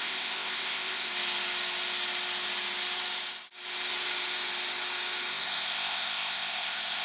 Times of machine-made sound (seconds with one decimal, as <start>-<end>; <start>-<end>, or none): 0.0-1.1; 5.3-7.0